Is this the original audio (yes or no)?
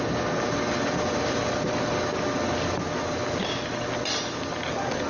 yes